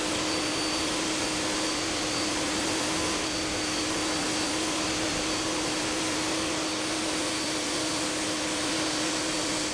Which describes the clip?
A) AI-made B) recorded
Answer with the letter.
B